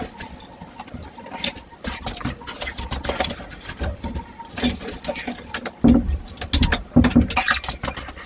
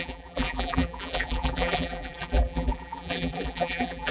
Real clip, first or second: first